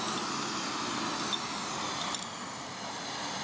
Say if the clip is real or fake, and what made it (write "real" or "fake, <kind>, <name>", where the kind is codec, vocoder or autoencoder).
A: real